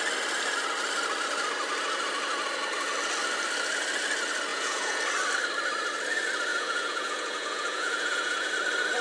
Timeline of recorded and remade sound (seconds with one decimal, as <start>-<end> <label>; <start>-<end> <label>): 0.0-4.5 recorded; 4.5-5.0 remade; 5.0-6.5 recorded; 6.5-8.5 remade; 8.5-9.0 recorded